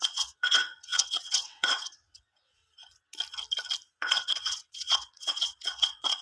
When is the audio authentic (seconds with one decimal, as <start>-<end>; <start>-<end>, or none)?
2.6-4.0